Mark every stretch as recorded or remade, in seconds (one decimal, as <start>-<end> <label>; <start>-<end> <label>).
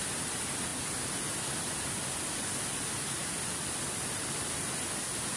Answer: 0.0-3.2 recorded; 3.2-5.0 remade; 5.0-5.4 recorded